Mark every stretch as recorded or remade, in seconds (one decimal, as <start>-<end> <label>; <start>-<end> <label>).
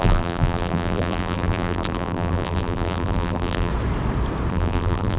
0.0-3.7 remade; 3.7-4.5 recorded; 4.5-5.2 remade